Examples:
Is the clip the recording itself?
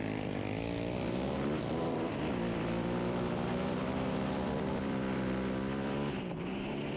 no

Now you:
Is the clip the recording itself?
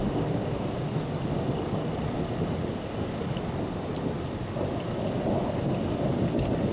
yes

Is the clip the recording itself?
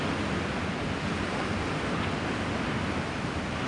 yes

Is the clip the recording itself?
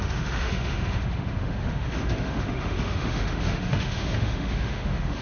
no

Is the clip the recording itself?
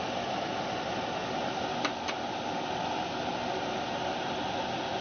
yes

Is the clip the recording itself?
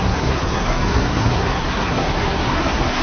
no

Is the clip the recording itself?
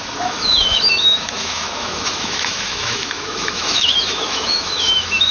no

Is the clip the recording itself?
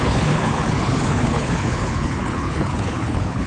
no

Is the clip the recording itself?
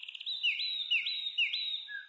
yes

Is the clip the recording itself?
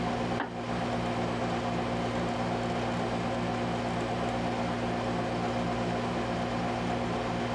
yes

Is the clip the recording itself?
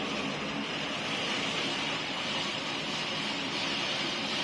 no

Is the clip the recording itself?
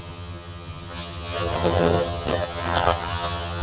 no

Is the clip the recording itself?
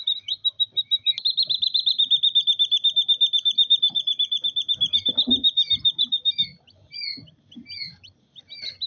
yes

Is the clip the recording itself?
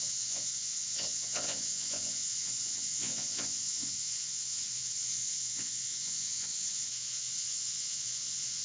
no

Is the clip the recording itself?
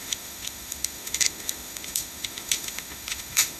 no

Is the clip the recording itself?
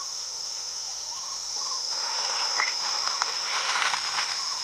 no